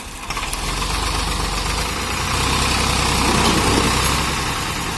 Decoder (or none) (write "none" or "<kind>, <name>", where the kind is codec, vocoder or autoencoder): none